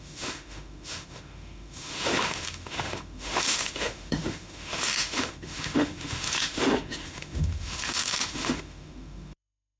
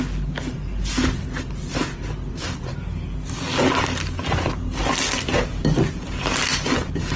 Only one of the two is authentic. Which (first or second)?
second